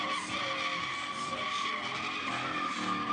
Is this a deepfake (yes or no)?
no